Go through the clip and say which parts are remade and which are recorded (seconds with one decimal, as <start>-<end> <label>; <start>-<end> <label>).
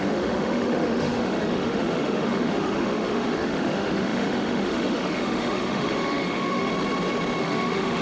0.0-6.7 remade; 6.7-7.4 recorded; 7.4-8.0 remade